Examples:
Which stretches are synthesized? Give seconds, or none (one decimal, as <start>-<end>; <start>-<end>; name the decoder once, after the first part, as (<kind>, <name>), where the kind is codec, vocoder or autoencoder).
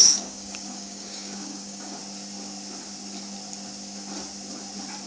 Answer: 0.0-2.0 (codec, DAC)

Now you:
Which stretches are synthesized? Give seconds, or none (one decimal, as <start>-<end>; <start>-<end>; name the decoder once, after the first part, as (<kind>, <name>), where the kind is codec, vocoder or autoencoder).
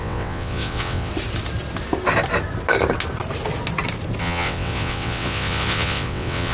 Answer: 0.0-1.1 (vocoder, WaveNeXt); 4.2-6.5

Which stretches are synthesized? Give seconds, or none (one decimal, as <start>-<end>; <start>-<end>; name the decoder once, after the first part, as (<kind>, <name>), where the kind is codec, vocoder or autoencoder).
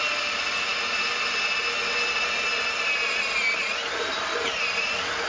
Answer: 0.0-0.7 (vocoder, BigVGAN v2); 3.9-5.3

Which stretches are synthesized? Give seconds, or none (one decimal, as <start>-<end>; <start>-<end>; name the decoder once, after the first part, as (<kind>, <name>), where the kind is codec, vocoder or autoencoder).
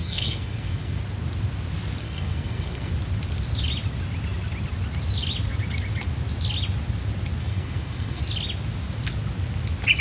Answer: 0.0-1.0 (codec, SNAC); 2.0-2.9; 7.4-8.2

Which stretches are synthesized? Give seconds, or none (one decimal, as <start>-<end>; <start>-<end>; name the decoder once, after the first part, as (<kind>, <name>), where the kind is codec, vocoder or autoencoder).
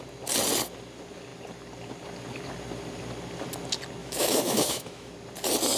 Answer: 4.0-5.1 (autoencoder, DAC-VAE)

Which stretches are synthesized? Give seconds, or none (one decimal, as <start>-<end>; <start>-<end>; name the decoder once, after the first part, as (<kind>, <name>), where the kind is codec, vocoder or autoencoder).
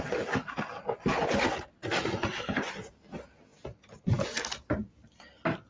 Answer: none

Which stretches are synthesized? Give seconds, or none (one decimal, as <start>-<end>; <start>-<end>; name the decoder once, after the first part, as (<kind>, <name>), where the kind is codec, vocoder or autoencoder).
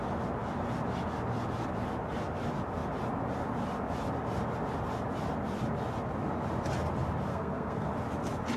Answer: 7.3-7.9 (codec, SNAC)